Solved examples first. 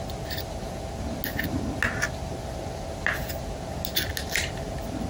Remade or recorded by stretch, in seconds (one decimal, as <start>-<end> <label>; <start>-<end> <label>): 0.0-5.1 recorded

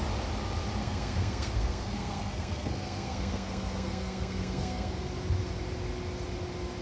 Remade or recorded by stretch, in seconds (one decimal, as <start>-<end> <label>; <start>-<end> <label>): 0.0-0.8 recorded; 0.8-4.9 remade; 4.9-6.8 recorded

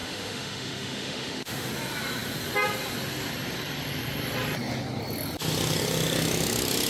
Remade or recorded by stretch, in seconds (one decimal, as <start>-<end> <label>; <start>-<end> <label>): 0.0-1.7 remade; 1.7-6.9 recorded